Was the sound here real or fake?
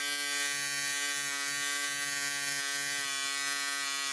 real